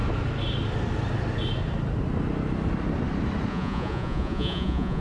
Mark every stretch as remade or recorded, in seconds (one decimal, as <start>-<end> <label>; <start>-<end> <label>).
0.0-3.5 recorded; 3.5-5.0 remade